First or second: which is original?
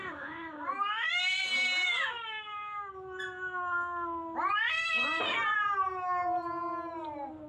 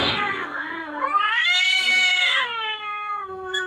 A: first